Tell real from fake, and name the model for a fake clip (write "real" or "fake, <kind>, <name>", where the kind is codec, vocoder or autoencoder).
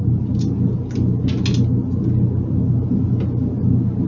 real